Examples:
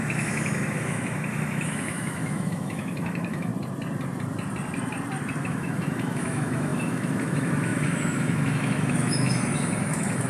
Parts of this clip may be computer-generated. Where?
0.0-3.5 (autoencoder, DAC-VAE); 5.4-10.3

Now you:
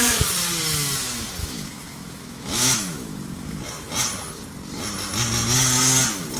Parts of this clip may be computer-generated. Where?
1.4-3.6 (autoencoder, DAC-VAE)

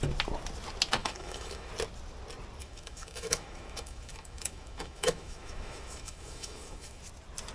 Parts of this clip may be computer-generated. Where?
1.0-1.7 (autoencoder, DAC-VAE); 2.6-7.0

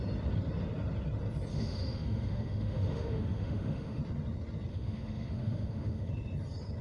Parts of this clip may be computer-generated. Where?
1.5-4.0 (autoencoder, DAC-VAE); 4.7-6.1

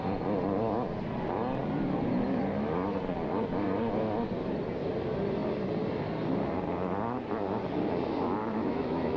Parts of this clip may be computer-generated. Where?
8.4-9.2 (autoencoder, DAC-VAE)

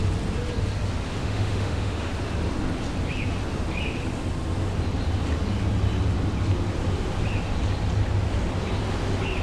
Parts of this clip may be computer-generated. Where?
1.2-2.1 (autoencoder, DAC-VAE)